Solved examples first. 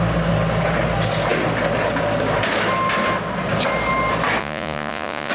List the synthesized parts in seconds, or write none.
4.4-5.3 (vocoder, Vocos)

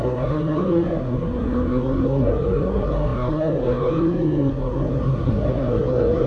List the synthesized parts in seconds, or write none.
0.0-6.3 (codec, SNAC)

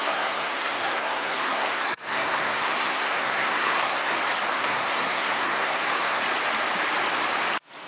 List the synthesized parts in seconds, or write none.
0.0-4.1 (codec, SNAC); 4.5-6.2